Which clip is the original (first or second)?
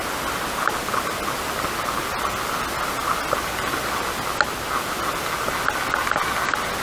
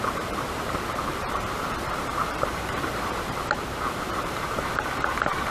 first